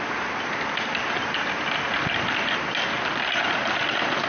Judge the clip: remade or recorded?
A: recorded